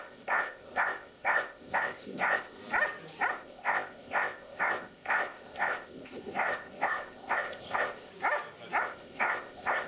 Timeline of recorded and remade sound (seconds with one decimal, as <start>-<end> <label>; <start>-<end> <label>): 0.0-2.6 remade; 2.6-3.3 recorded; 3.3-8.1 remade; 8.1-8.8 recorded; 8.8-9.9 remade